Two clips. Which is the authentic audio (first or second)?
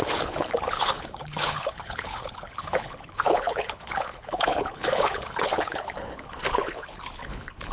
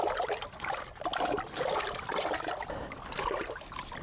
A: second